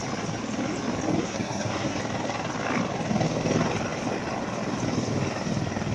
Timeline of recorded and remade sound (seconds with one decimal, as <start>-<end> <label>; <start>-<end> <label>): 0.0-1.2 recorded; 1.2-2.0 remade; 2.0-5.9 recorded